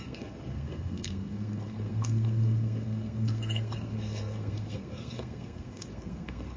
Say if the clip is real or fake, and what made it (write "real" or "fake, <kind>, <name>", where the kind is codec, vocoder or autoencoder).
fake, codec, SNAC